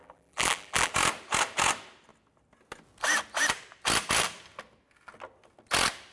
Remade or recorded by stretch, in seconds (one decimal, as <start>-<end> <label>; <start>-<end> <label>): 0.0-0.9 remade; 0.9-6.1 recorded